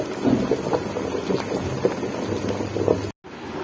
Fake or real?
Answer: real